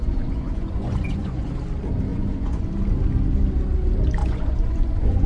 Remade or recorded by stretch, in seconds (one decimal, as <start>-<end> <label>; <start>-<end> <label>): 0.0-1.5 remade; 1.5-2.1 recorded; 2.1-2.7 remade; 2.7-4.2 recorded; 4.2-5.3 remade